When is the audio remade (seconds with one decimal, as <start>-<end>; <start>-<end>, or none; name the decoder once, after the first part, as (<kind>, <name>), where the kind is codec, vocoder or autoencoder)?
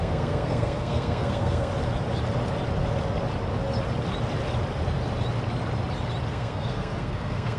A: 0.0-1.7 (codec, SNAC); 6.3-7.6